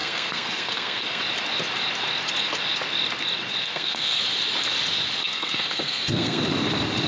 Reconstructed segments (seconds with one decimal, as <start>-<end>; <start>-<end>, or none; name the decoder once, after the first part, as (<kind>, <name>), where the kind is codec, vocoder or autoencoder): 0.0-1.2 (codec, SNAC); 3.6-4.2; 5.2-6.4